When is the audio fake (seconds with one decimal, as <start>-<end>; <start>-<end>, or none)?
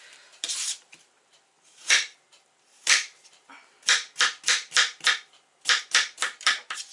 0.0-3.5; 5.8-6.9